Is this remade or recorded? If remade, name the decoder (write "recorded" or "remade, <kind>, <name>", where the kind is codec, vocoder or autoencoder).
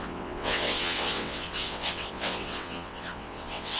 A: remade, vocoder, WaveNeXt